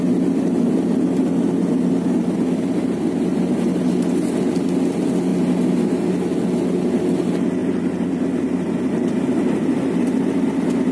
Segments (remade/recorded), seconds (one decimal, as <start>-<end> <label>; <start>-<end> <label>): 0.0-10.9 recorded